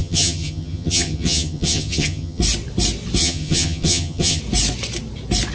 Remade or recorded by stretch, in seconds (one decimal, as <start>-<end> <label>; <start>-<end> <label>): 0.0-2.4 remade; 2.4-3.2 recorded; 3.2-4.4 remade; 4.4-5.5 recorded